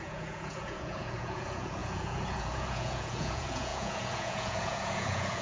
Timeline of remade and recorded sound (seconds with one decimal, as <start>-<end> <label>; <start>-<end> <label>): 0.0-5.4 remade